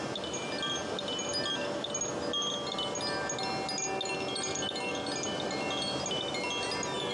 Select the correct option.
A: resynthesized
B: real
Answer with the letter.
B